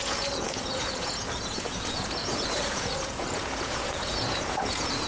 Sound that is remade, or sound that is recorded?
remade